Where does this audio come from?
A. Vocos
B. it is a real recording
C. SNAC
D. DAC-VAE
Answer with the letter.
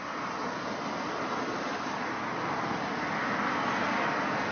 B